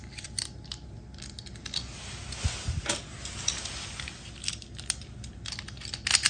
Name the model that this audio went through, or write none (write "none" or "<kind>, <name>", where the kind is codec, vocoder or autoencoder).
none